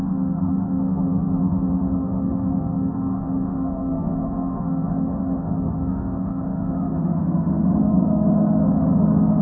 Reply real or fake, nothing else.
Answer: fake